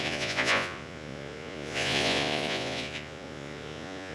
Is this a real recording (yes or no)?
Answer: no